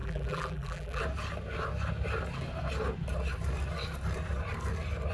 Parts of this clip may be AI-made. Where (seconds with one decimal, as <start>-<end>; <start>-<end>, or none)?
0.0-1.0